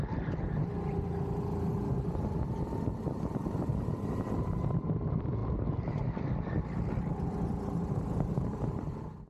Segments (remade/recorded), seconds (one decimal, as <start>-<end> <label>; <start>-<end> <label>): 0.0-9.3 recorded